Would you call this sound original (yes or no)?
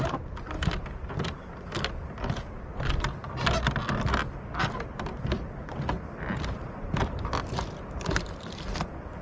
yes